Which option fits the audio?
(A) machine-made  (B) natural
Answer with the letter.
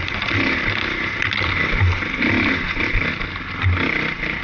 B